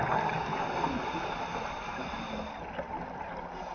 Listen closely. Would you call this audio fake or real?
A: real